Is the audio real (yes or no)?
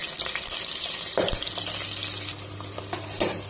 yes